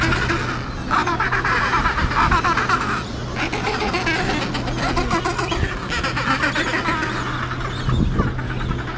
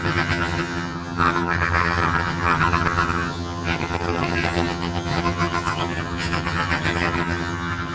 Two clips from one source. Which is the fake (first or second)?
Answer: second